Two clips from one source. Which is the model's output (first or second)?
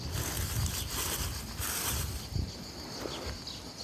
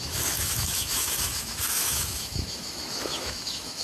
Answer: second